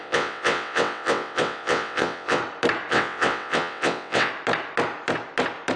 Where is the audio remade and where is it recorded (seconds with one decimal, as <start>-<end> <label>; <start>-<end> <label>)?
0.0-2.4 remade; 2.4-2.9 recorded; 2.9-4.3 remade; 4.3-5.8 recorded